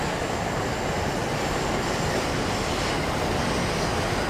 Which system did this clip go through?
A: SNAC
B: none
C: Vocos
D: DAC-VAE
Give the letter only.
B